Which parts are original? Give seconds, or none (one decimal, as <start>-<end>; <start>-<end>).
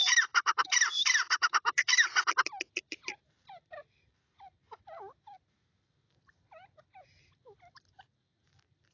2.3-2.7; 3.8-8.9